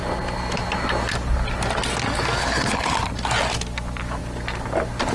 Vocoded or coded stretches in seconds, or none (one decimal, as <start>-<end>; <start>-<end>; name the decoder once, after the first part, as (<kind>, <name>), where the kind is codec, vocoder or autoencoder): 2.4-2.9 (codec, HILCodec)